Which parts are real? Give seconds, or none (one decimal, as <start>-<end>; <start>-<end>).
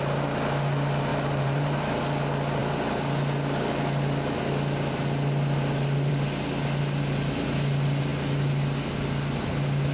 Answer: 0.0-1.1; 2.0-9.9